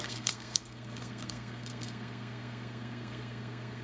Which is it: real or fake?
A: fake